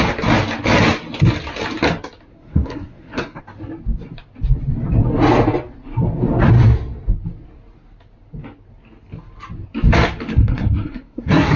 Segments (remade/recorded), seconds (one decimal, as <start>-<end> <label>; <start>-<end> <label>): 0.0-2.3 recorded; 2.3-3.4 remade; 3.4-10.3 recorded; 10.3-11.6 remade